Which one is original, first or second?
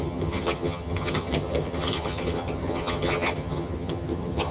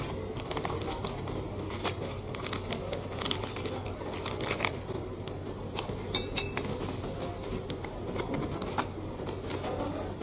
second